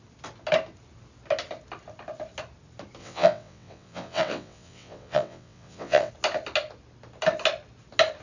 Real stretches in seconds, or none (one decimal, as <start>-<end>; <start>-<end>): 0.0-3.0; 6.1-8.2